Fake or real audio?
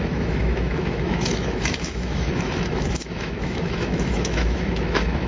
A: fake